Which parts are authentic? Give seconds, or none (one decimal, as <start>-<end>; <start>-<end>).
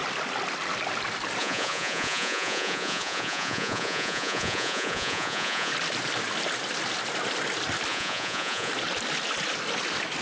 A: 0.0-1.4; 5.7-7.9; 8.7-10.2